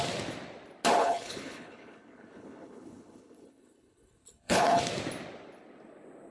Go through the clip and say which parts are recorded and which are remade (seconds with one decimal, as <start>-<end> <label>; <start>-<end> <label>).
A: 0.0-1.0 recorded; 1.0-4.8 remade; 4.8-6.3 recorded